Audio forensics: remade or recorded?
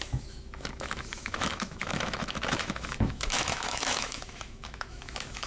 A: remade